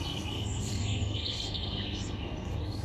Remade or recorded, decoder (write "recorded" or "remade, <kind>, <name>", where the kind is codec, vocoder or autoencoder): remade, codec, SNAC